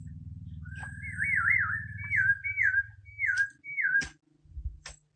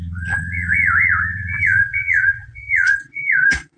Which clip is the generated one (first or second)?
second